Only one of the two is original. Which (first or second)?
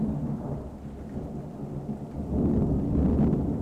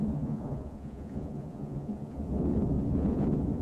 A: first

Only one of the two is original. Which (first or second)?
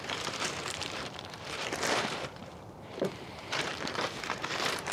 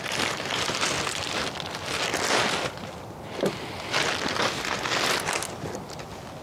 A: second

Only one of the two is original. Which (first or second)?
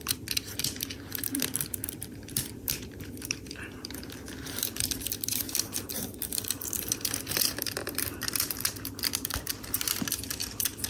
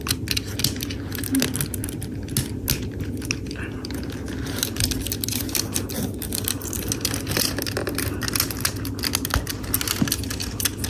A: second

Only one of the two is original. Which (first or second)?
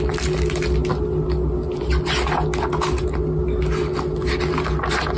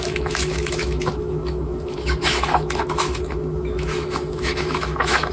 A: first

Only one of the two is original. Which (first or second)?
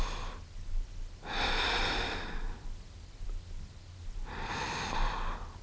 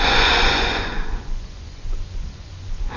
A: first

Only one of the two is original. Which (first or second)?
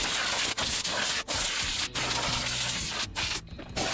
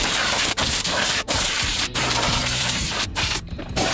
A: first